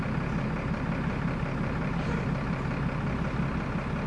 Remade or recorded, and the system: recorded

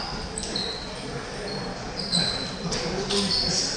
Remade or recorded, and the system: recorded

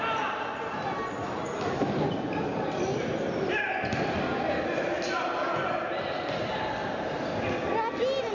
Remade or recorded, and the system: recorded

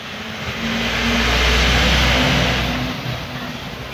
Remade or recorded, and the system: recorded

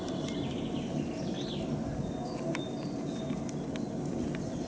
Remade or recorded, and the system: recorded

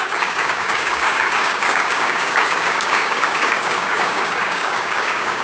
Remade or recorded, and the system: remade, codec, DAC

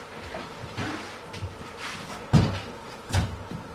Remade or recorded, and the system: recorded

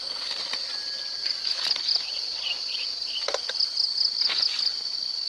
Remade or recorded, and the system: recorded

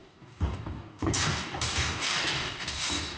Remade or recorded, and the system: remade, codec, DAC